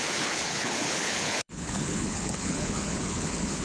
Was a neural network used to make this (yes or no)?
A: yes